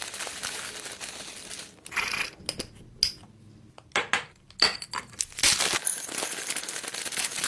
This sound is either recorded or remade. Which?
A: recorded